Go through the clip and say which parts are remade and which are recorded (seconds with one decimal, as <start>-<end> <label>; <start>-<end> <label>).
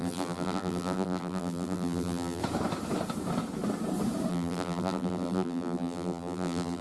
0.0-2.4 remade; 2.4-4.3 recorded; 4.3-6.8 remade